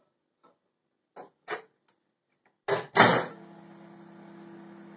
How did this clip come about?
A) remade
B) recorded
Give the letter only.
B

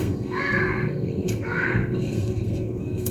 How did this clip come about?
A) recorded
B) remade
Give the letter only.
B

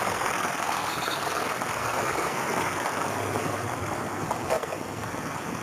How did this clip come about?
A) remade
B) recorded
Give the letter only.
A